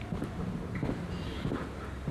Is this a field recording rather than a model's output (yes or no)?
yes